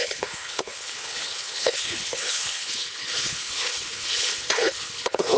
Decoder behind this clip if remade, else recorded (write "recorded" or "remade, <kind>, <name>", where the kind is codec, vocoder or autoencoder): remade, codec, HILCodec